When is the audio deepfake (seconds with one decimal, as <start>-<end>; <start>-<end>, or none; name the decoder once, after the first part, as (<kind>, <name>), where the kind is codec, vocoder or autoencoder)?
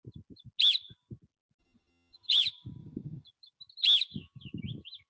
1.6-2.4 (vocoder, HiFi-GAN); 2.8-3.3